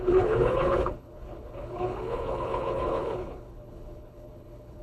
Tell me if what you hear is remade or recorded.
remade